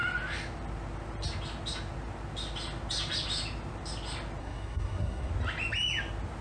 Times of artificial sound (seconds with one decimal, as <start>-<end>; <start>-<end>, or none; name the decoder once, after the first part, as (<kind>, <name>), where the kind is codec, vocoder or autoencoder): 4.4-5.3 (codec, SNAC)